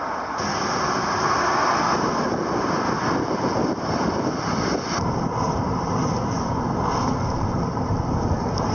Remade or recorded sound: recorded